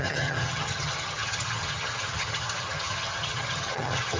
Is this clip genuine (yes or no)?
no